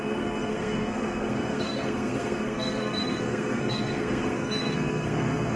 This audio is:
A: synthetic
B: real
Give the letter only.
A